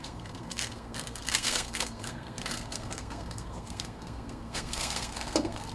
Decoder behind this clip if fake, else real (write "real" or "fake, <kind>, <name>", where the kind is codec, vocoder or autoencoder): fake, codec, SNAC